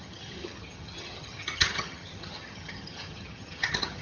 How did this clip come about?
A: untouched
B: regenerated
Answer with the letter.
B